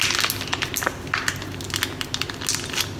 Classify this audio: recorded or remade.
recorded